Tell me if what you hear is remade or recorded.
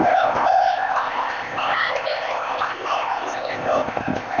remade